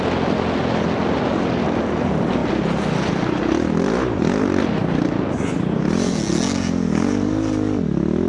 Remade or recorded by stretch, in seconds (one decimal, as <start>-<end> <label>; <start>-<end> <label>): 0.0-8.3 recorded